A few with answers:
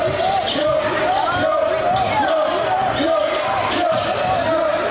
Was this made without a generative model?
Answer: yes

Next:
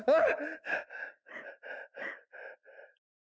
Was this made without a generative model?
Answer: yes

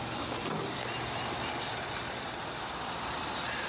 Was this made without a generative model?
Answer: yes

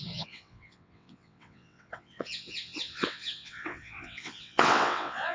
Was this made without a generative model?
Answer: no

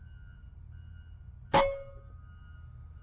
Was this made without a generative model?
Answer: yes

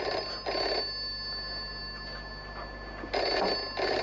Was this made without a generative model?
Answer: yes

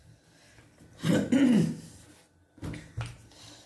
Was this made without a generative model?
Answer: yes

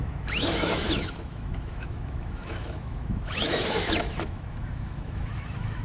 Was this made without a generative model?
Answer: no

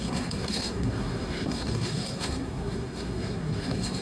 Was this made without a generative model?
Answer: no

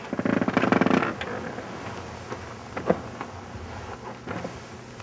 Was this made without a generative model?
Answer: yes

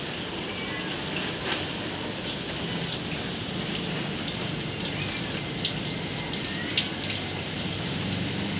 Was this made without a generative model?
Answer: yes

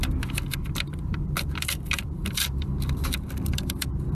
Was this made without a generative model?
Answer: no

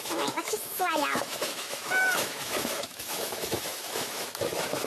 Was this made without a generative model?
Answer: no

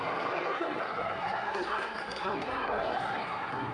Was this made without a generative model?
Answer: no